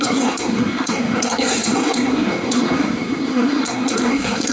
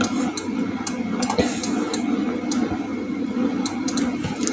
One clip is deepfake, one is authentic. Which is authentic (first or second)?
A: second